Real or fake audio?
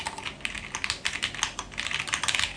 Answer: real